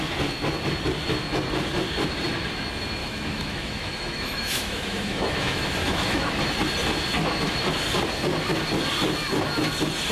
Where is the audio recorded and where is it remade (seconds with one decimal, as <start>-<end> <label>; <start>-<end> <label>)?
0.0-3.0 recorded; 3.0-6.4 remade; 6.4-10.1 recorded